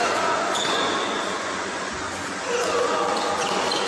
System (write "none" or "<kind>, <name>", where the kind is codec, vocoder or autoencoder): vocoder, Vocos